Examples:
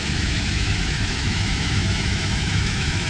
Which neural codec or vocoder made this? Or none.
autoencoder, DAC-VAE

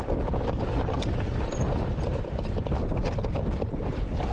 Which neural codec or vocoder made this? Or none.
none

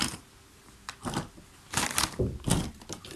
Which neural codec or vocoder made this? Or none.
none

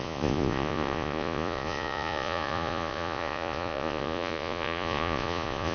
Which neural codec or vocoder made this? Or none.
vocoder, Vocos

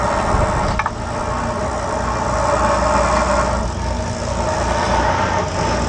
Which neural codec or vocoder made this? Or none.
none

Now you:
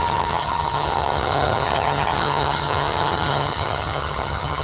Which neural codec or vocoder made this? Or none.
vocoder, HiFi-GAN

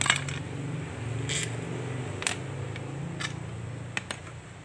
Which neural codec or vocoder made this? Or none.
none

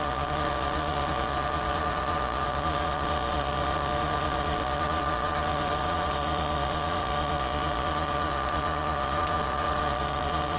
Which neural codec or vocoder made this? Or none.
vocoder, Vocos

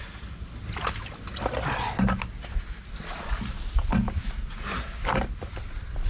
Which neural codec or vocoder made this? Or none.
none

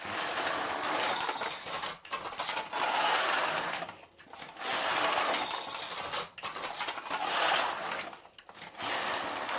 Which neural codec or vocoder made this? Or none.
none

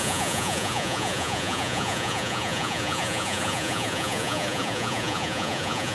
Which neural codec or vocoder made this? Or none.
vocoder, Vocos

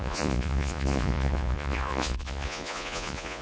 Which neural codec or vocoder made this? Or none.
vocoder, Vocos